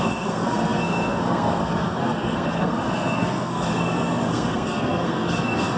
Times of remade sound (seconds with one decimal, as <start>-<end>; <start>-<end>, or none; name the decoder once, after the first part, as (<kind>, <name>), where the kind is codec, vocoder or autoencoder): 0.0-5.8 (codec, SNAC)